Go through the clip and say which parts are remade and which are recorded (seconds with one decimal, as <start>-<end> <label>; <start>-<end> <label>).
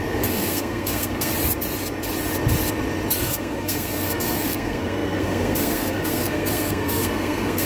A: 0.0-1.3 remade; 1.3-3.2 recorded; 3.2-7.7 remade